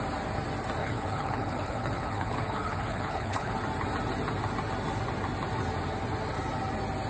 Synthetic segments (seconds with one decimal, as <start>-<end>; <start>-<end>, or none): 0.8-3.5